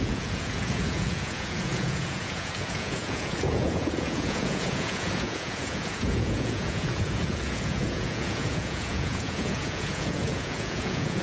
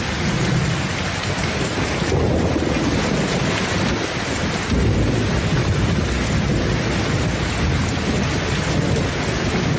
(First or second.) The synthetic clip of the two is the first